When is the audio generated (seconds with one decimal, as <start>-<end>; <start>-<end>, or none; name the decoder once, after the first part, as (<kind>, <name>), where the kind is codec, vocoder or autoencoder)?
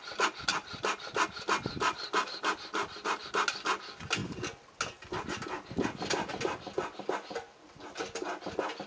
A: none